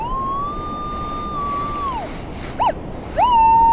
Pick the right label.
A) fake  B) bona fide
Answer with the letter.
B